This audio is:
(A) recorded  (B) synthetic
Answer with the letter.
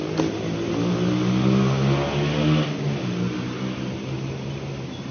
A